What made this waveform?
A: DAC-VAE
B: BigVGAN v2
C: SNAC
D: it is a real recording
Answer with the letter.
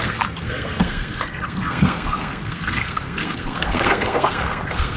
C